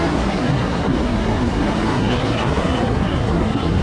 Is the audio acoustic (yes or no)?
no